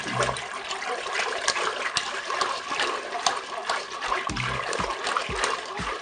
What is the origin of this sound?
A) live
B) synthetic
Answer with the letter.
A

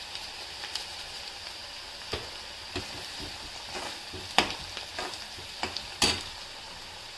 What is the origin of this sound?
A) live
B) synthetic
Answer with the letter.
A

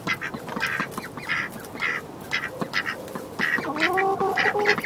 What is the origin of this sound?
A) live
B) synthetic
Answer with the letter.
A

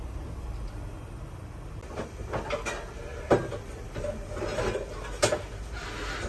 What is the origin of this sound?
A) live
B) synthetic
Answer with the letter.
A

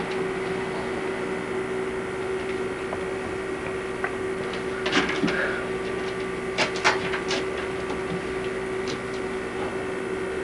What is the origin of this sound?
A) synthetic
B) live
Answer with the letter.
B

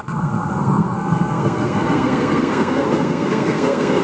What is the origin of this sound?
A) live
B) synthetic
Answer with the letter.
B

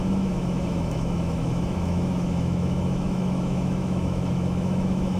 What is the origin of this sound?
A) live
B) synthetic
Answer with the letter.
B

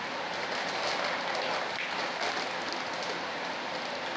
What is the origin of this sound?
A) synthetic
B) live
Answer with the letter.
B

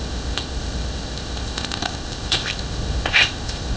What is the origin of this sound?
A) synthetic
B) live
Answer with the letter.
A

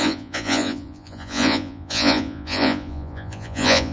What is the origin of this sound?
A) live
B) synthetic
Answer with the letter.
B